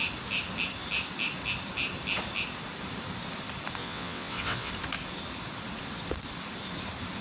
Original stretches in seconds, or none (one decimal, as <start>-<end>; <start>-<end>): 0.0-3.8; 4.7-7.2